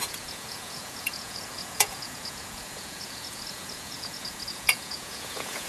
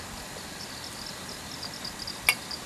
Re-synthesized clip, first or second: first